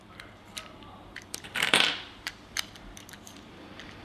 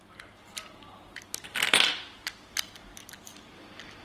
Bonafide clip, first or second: second